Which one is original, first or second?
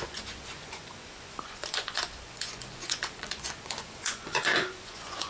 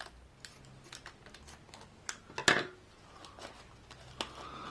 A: second